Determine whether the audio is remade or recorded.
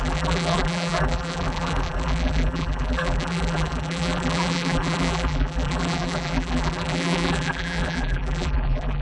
remade